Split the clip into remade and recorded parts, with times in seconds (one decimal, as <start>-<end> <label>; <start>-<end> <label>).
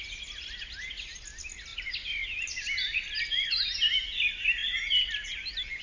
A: 0.0-5.8 recorded